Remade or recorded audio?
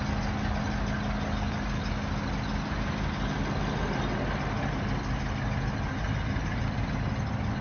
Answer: recorded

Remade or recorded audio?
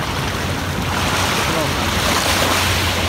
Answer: recorded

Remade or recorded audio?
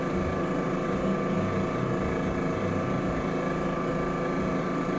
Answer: recorded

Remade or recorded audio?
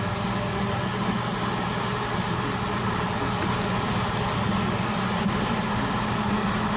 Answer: recorded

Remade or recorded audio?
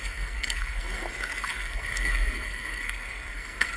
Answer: remade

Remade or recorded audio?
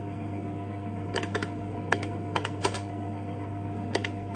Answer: remade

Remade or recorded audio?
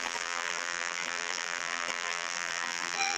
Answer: remade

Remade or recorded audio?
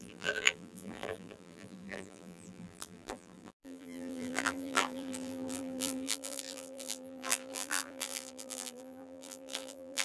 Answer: remade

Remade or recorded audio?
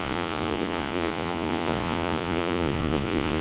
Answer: remade